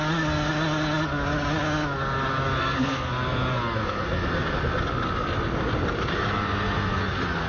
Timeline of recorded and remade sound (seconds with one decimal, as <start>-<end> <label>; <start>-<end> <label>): 0.0-2.6 recorded; 2.6-3.1 remade; 3.1-7.5 recorded